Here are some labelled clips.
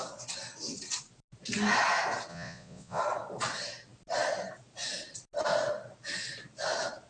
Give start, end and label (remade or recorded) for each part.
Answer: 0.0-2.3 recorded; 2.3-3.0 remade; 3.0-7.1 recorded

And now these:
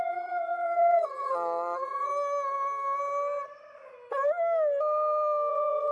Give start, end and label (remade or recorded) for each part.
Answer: 0.0-2.1 remade; 2.1-5.5 recorded; 5.5-5.9 remade

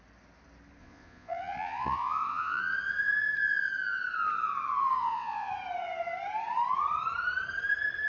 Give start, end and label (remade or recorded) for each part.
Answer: 0.0-0.8 recorded; 0.8-2.6 remade; 2.6-5.0 recorded; 5.0-5.5 remade; 5.5-8.1 recorded

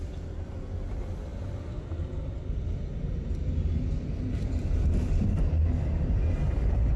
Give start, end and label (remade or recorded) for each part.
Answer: 0.0-7.0 recorded

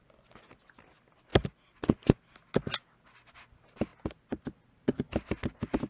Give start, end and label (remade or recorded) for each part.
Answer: 0.0-5.9 recorded

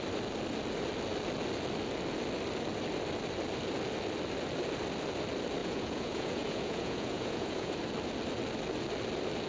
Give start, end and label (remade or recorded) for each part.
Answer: 0.0-5.6 recorded; 5.6-7.8 remade; 7.8-9.5 recorded

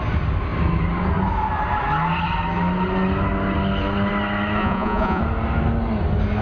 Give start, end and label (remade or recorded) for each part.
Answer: 0.0-4.6 recorded; 4.6-5.2 remade; 5.2-6.4 recorded